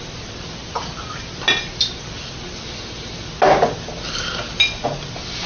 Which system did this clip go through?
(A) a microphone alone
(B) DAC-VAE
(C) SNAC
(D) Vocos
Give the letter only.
A